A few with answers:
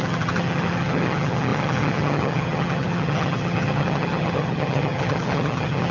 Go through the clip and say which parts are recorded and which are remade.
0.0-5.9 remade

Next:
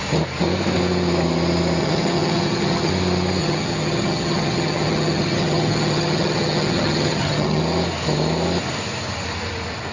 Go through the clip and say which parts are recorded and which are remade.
0.0-1.8 recorded; 1.8-2.9 remade; 2.9-3.4 recorded; 3.4-7.6 remade; 7.6-9.9 recorded

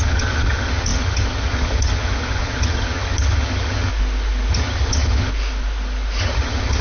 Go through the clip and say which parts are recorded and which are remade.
0.0-3.9 remade; 3.9-4.5 recorded; 4.5-5.3 remade; 5.3-6.2 recorded; 6.2-6.8 remade

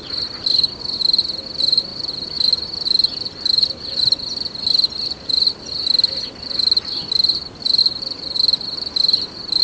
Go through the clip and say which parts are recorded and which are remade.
0.0-9.6 recorded

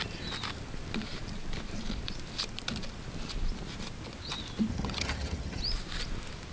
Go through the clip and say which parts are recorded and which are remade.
0.0-4.7 recorded; 4.7-5.6 remade; 5.6-6.5 recorded

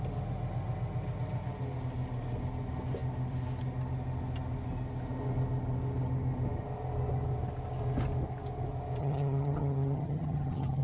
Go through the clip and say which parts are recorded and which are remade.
0.0-9.0 recorded; 9.0-10.8 remade

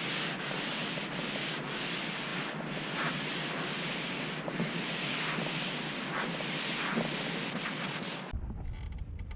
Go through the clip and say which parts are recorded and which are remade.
0.0-9.4 recorded

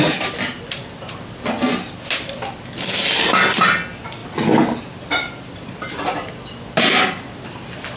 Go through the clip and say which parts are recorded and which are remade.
0.0-8.0 recorded